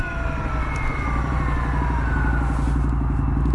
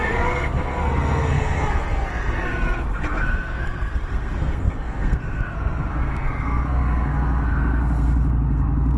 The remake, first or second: second